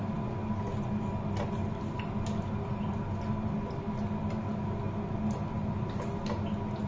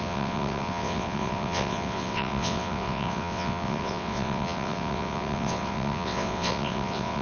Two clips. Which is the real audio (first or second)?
first